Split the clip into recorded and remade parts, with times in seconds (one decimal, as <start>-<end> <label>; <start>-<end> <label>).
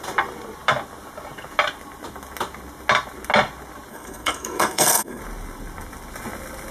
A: 0.0-3.9 recorded; 3.9-5.2 remade; 5.2-6.7 recorded